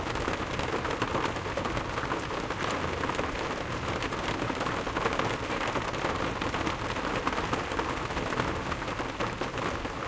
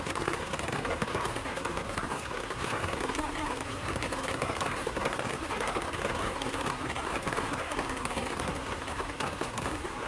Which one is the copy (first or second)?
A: second